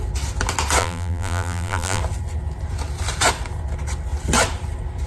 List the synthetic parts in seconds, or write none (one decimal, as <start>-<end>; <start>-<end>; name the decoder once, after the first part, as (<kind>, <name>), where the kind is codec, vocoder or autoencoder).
0.8-2.0 (vocoder, BigVGAN v2)